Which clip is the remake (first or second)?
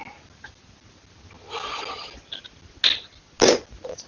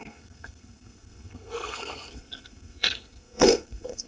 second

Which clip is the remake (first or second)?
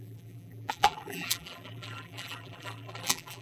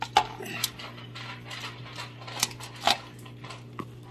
first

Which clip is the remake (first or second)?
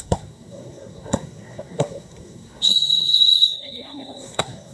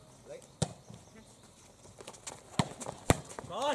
first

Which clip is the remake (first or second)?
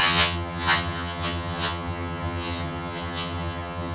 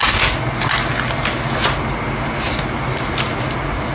first